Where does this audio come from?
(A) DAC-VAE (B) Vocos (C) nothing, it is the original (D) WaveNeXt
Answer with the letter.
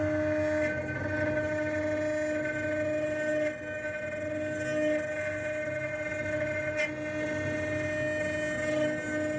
C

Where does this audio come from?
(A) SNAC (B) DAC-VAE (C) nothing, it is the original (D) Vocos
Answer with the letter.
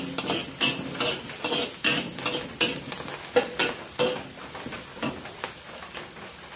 C